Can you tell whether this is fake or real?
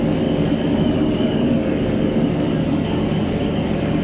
fake